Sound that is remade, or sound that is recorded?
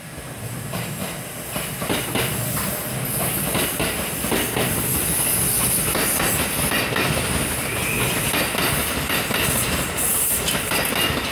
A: recorded